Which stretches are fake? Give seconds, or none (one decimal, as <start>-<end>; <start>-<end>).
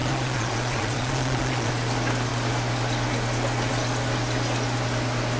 0.0-1.7